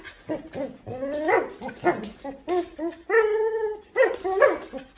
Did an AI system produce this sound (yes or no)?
no